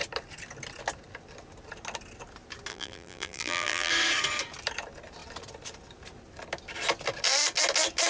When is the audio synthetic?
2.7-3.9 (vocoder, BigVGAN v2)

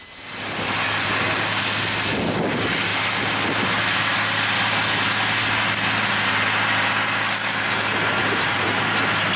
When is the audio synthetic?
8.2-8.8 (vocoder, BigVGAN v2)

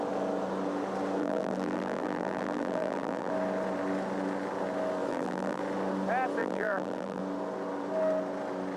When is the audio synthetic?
1.2-3.3 (vocoder, BigVGAN v2); 5.1-5.6; 6.4-7.2